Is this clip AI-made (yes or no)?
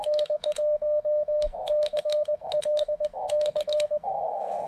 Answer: yes